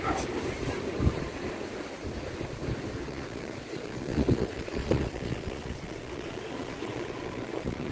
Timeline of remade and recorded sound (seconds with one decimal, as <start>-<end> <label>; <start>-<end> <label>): 0.0-3.1 recorded; 3.1-7.9 remade